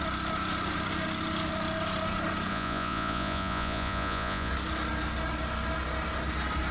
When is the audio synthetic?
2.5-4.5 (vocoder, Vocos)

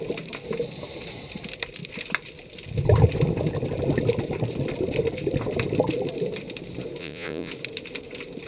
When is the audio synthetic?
7.0-7.5 (vocoder, Vocos)

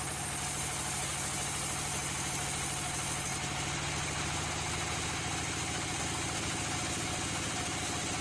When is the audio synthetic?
none

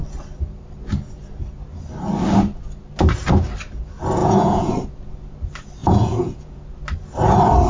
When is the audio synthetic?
4.2-4.7 (vocoder, Vocos); 5.8-6.6

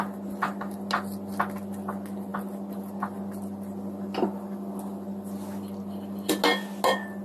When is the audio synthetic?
none